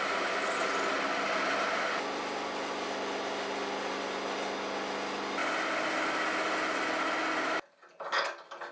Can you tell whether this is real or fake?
real